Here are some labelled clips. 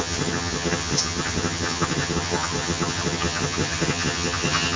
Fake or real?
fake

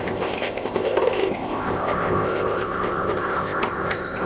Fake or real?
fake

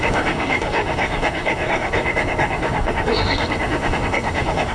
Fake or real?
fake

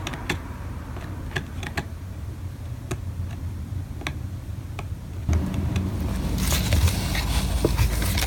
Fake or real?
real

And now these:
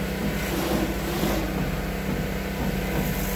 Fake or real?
real